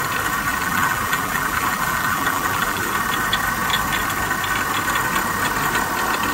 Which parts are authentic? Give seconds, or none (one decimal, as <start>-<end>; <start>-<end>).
0.0-0.5; 2.9-6.3